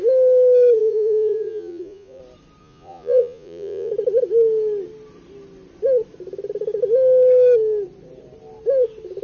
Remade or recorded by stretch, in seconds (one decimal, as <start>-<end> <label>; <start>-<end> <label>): 0.0-0.8 recorded; 0.8-2.2 remade; 2.2-2.6 recorded; 2.6-3.9 remade; 3.9-9.2 recorded